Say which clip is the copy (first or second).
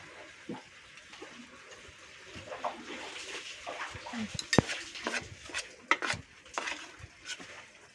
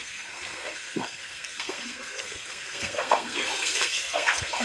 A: second